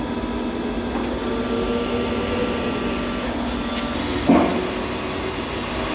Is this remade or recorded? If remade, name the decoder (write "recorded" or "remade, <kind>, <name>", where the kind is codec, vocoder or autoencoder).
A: recorded